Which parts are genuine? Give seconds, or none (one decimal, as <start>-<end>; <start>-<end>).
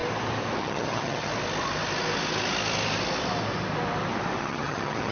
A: 0.0-0.6; 1.3-4.4